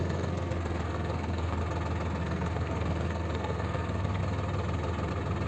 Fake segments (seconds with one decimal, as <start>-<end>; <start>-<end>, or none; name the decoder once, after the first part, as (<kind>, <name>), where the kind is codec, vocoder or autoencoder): 0.0-1.6 (codec, SNAC); 2.2-4.2